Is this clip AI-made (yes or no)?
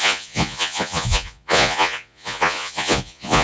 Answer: yes